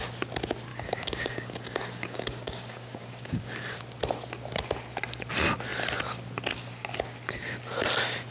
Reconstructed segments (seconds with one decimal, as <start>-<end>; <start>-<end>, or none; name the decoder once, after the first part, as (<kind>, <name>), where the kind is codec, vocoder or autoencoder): 0.7-3.8 (codec, DAC)